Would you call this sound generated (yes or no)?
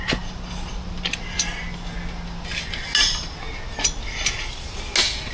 no